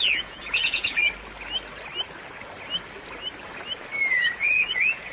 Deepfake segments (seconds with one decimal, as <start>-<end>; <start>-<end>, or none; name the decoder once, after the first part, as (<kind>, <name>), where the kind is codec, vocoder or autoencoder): 0.0-1.0 (vocoder, Vocos); 4.1-5.1